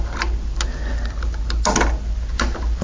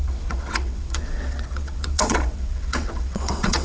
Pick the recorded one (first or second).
first